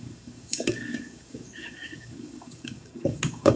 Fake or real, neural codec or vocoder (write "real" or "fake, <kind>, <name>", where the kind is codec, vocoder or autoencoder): fake, codec, DAC